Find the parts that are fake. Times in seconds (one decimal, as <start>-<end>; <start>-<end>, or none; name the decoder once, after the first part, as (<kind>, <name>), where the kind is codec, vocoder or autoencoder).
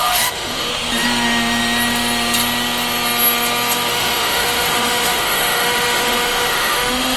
0.0-0.7 (autoencoder, DAC-VAE); 3.9-7.2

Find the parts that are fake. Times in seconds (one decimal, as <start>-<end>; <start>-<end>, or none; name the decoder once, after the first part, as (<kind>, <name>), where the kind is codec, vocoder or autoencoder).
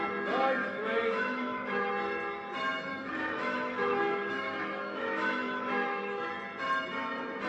0.6-1.9 (autoencoder, DAC-VAE); 2.9-6.3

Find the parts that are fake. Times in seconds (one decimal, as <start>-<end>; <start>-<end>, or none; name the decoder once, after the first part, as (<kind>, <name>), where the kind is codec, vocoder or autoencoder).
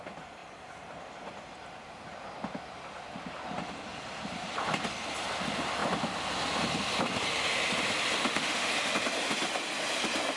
8.2-8.7 (autoencoder, DAC-VAE)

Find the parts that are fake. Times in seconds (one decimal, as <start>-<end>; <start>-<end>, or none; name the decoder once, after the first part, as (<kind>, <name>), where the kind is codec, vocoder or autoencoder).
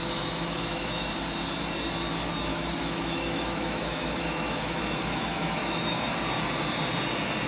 0.0-1.1 (autoencoder, DAC-VAE); 2.5-6.1